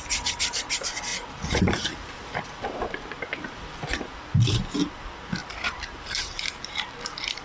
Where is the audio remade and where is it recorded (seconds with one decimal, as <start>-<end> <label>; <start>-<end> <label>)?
0.0-5.4 recorded; 5.4-6.5 remade; 6.5-7.4 recorded